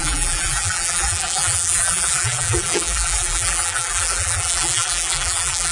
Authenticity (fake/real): fake